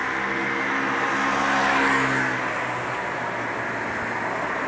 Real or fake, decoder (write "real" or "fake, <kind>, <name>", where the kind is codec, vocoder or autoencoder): real